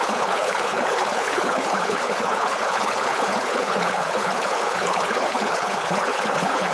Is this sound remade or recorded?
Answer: remade